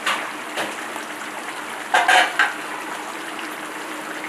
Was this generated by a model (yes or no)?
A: no